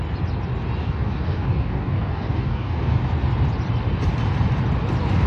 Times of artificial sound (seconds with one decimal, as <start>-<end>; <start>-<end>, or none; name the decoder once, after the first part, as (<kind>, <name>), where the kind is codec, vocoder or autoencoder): 0.8-3.0 (codec, DAC)